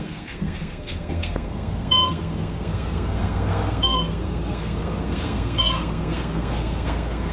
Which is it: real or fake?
fake